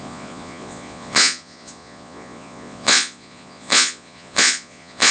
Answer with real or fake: fake